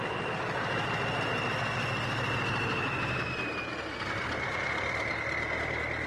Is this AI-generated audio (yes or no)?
no